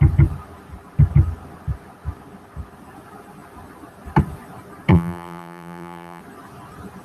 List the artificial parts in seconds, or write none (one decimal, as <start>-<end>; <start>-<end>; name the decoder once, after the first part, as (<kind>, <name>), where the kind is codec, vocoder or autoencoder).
4.9-6.2 (vocoder, BigVGAN v2)

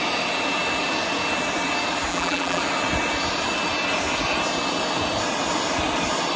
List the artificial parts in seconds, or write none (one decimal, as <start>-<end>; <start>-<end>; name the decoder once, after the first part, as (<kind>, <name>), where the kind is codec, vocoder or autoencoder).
2.1-2.6 (vocoder, BigVGAN v2)

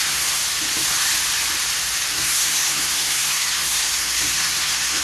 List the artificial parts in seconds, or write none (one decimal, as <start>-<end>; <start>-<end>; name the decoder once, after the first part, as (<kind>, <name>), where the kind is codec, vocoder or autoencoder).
0.0-0.4 (codec, SNAC); 2.1-5.0

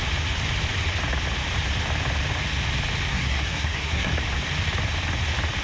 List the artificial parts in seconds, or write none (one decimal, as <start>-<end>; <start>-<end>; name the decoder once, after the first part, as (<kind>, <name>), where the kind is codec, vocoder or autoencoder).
3.1-4.1 (codec, SNAC)

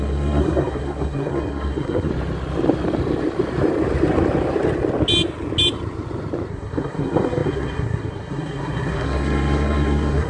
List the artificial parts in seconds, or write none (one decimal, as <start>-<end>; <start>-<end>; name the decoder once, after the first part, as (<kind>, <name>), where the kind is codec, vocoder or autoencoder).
0.0-2.1 (codec, SNAC); 6.5-10.3

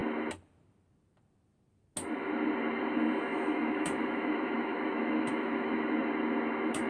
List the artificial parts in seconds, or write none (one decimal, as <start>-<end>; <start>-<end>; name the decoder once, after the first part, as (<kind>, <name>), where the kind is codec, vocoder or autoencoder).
3.3-6.0 (autoencoder, DAC-VAE)

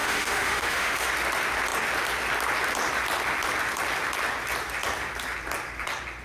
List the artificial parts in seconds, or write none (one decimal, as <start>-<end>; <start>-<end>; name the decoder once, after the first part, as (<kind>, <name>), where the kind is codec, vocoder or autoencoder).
0.0-1.1 (autoencoder, DAC-VAE)